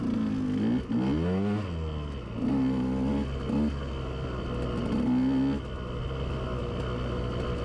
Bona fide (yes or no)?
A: yes